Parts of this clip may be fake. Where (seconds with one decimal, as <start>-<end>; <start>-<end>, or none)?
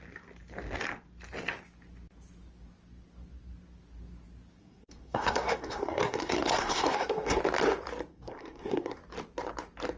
4.6-7.4; 8.1-9.0